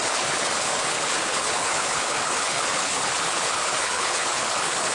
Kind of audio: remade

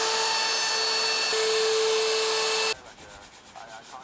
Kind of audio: recorded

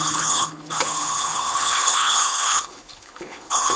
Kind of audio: remade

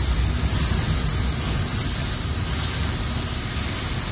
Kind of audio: recorded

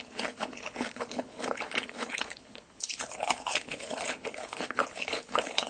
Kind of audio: remade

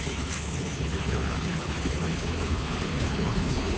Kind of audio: remade